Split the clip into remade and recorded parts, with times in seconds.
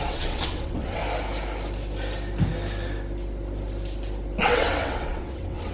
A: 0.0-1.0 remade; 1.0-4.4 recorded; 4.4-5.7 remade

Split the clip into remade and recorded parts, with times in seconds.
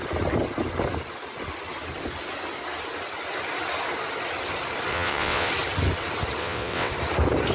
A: 0.0-4.9 recorded; 4.9-5.5 remade; 5.5-6.4 recorded; 6.4-6.9 remade; 6.9-7.5 recorded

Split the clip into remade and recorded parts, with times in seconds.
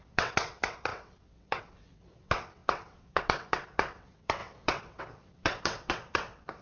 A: 0.0-6.6 remade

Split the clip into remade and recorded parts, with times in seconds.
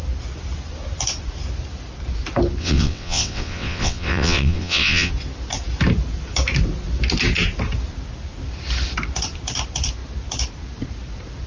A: 0.0-2.6 recorded; 2.6-5.1 remade; 5.1-11.5 recorded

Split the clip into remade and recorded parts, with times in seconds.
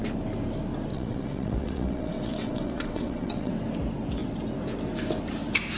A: 0.0-0.9 recorded; 0.9-3.5 remade; 3.5-5.8 recorded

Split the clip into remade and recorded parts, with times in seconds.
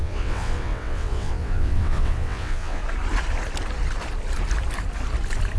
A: 0.0-2.8 remade; 2.8-5.6 recorded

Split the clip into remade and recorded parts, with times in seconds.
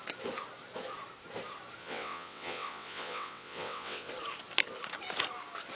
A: 0.0-1.8 recorded; 1.8-4.1 remade; 4.1-5.8 recorded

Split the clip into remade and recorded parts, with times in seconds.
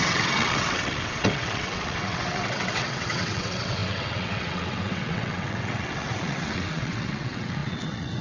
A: 0.0-8.2 remade